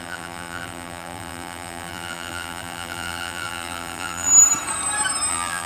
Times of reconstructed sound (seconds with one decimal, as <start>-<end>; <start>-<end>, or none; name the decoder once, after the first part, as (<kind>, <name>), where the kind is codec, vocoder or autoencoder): 0.0-4.3 (vocoder, BigVGAN v2); 5.3-5.7